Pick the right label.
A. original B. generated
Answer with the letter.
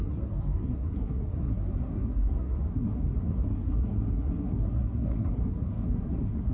B